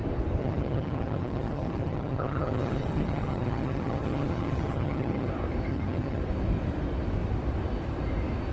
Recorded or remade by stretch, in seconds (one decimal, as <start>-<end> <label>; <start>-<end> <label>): 0.0-0.4 recorded; 0.4-5.3 remade; 5.3-5.7 recorded; 5.7-6.2 remade; 6.2-8.5 recorded